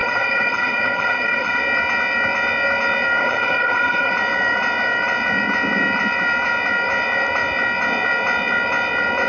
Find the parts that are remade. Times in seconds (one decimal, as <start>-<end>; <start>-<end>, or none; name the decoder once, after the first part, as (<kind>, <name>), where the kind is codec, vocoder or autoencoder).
0.0-1.6 (vocoder, HiFi-GAN); 3.2-4.1